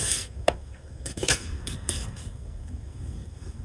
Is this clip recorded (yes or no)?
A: no